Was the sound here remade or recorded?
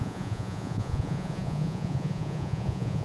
remade